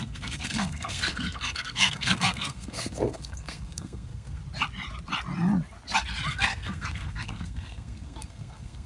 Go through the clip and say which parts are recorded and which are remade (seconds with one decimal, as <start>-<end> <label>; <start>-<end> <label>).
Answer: 0.0-4.4 remade; 4.4-6.3 recorded; 6.3-8.9 remade